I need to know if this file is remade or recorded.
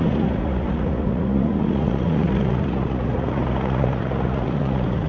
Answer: remade